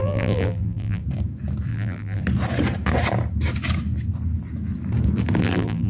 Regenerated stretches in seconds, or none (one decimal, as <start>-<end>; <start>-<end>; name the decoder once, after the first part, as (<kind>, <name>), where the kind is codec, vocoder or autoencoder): 0.0-1.0 (vocoder, BigVGAN v2); 1.7-2.2; 5.4-5.9